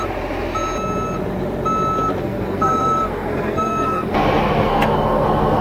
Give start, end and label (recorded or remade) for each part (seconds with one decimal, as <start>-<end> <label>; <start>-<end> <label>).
0.0-2.2 recorded; 2.2-5.6 remade